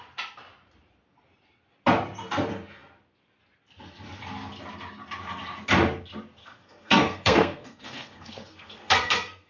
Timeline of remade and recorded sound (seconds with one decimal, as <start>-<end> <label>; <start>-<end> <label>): 0.0-6.4 recorded; 6.4-9.5 remade